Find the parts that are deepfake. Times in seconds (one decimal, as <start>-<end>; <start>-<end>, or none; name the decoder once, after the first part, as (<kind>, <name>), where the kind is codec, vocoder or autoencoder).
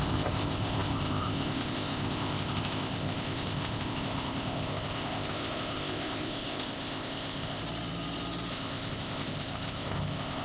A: 0.0-7.6 (codec, ZipCodec); 8.5-10.4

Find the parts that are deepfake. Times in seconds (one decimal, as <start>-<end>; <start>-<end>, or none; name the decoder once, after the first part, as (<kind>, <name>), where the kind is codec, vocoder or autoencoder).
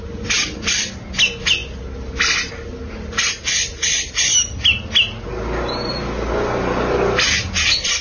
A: none